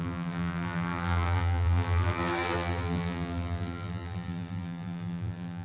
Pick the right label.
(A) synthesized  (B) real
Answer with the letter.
A